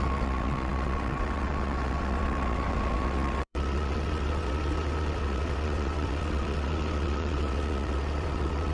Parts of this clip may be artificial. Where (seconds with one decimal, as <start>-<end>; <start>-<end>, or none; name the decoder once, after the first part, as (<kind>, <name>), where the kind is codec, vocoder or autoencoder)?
0.0-8.7 (vocoder, WaveNeXt)